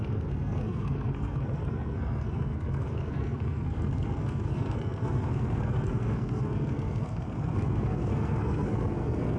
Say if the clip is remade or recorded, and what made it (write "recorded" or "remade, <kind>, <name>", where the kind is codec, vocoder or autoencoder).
remade, codec, SNAC